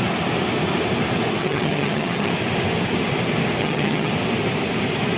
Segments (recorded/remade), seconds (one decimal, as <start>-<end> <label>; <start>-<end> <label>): 0.0-1.4 recorded; 1.4-2.3 remade; 2.3-3.6 recorded; 3.6-4.1 remade; 4.1-5.2 recorded